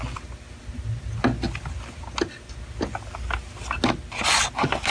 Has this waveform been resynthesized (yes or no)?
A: no